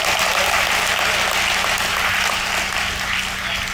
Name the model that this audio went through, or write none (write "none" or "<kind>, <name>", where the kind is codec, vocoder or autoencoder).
none